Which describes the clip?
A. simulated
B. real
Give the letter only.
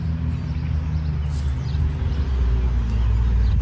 B